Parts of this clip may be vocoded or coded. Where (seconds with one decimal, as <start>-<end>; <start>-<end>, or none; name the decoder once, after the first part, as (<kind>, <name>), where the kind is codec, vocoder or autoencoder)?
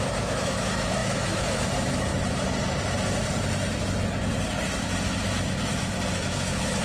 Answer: 0.0-2.1 (autoencoder, DAC-VAE); 6.1-6.8